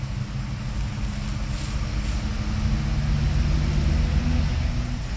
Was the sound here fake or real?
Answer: real